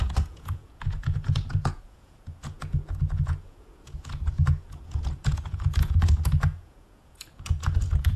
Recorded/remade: remade